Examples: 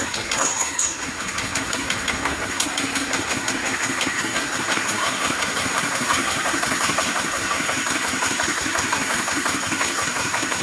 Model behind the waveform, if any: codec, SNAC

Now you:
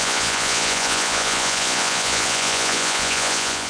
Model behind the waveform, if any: vocoder, Vocos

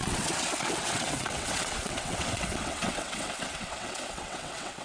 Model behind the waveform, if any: vocoder, WaveNeXt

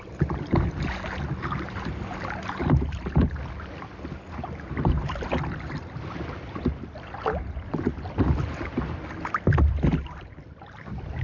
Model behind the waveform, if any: none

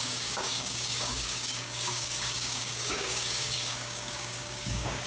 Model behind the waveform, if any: codec, DAC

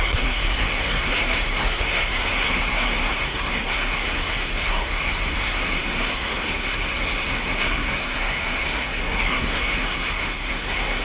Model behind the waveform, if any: codec, SNAC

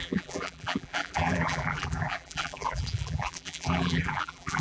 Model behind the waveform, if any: vocoder, BigVGAN v2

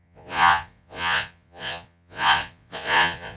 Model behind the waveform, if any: vocoder, Vocos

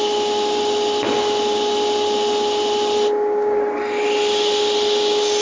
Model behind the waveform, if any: none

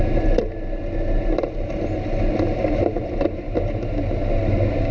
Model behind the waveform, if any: none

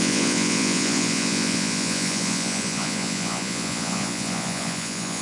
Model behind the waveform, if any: vocoder, Vocos